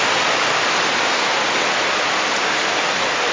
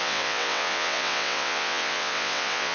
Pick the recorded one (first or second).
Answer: first